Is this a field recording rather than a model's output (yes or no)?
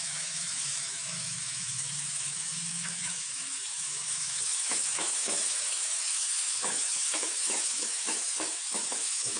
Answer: no